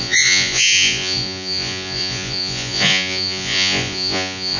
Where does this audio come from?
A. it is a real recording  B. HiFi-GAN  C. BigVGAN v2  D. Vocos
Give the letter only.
D